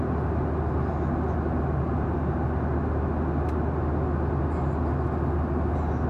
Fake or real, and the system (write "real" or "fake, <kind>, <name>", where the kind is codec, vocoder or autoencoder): real